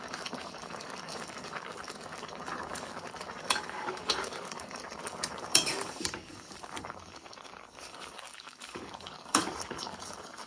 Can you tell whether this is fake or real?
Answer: fake